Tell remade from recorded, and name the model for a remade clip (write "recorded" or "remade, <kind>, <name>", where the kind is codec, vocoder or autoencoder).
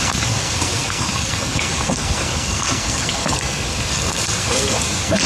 remade, codec, SNAC